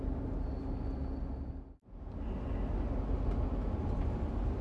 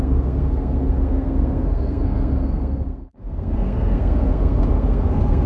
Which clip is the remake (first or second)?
second